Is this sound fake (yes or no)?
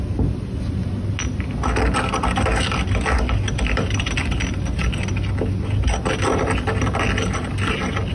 no